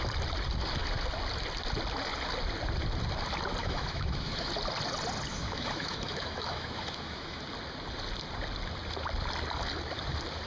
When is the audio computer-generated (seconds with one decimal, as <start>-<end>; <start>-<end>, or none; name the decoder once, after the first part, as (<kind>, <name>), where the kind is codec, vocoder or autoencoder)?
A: 3.6-4.5 (autoencoder, DAC-VAE); 5.3-7.4